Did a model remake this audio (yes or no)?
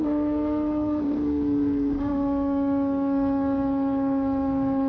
yes